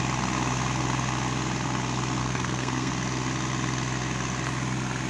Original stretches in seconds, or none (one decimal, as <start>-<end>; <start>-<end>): 0.0-2.2; 2.9-5.1